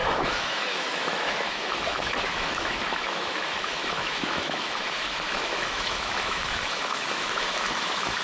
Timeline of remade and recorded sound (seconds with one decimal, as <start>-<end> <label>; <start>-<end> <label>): 0.0-8.2 remade